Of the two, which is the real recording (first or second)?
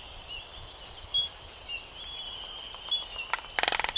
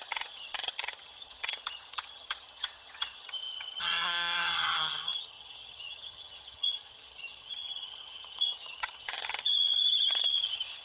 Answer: first